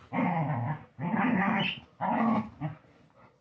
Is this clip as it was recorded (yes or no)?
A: yes